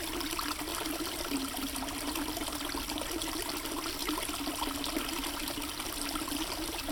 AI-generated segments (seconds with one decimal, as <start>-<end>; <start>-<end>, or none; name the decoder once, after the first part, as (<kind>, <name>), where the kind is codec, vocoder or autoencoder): 0.7-1.8 (vocoder, BigVGAN v2)